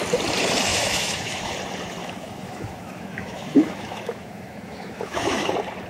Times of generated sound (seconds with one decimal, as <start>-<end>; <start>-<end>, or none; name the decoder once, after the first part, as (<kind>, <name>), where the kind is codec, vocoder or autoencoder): 0.7-1.5 (autoencoder, DAC-VAE); 2.0-5.5